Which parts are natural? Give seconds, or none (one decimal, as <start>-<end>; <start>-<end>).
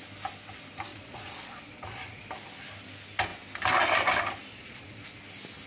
0.0-0.9; 2.3-4.5; 5.2-5.7